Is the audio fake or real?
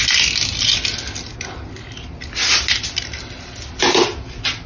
real